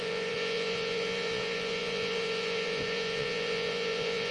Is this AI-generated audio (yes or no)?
yes